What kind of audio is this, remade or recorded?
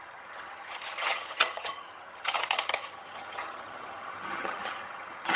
remade